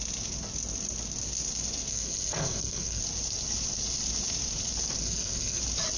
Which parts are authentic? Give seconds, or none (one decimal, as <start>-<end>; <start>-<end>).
0.0-1.9; 3.0-5.0; 5.6-6.0